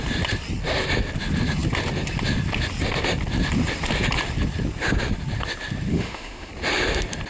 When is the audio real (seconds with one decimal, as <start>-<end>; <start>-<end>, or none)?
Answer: 0.0-5.9; 6.5-7.3